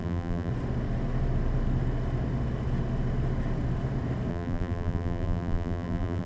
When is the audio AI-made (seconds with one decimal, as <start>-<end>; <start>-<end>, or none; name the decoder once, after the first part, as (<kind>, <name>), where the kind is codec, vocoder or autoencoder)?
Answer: 0.0-0.5 (vocoder, BigVGAN v2); 4.3-6.3